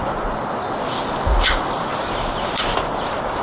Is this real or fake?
real